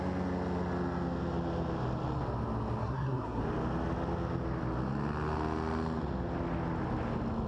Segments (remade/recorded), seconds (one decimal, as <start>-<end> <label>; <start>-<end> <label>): 0.0-2.8 recorded; 2.8-3.4 remade; 3.4-7.5 recorded